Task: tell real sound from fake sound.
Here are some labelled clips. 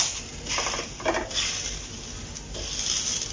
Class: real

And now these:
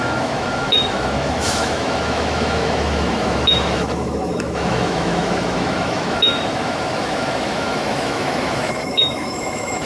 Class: fake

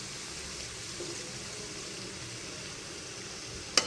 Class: real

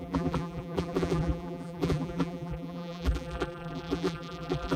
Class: fake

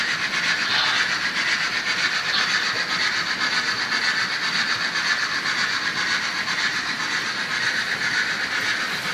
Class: real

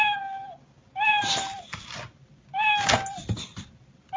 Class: real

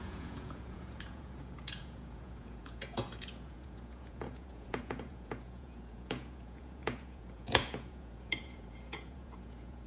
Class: fake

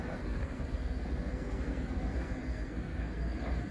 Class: fake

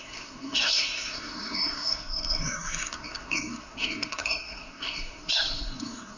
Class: fake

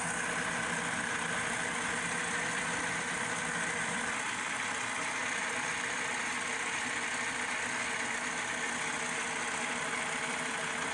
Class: real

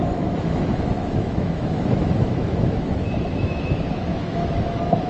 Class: fake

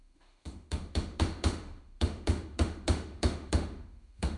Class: fake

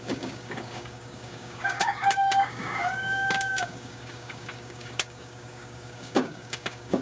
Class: fake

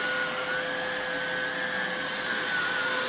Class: real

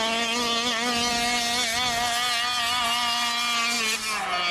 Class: real